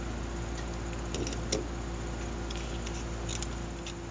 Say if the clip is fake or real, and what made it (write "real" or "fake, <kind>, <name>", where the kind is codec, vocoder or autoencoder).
real